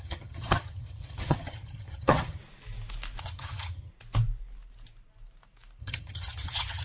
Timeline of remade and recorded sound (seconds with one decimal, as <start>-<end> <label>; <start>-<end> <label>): 0.0-2.4 remade; 2.4-3.2 recorded; 3.2-3.9 remade; 3.9-5.8 recorded; 5.8-6.8 remade